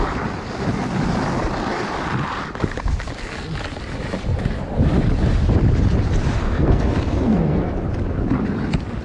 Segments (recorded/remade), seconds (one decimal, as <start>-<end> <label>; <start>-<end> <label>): 0.0-6.4 recorded; 6.4-7.6 remade; 7.6-9.0 recorded